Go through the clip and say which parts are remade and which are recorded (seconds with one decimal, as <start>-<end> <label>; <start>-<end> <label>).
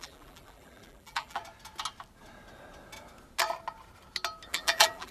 0.0-1.4 remade; 1.4-4.5 recorded; 4.5-5.1 remade